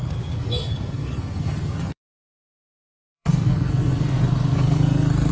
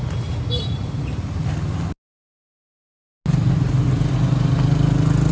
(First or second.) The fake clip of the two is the first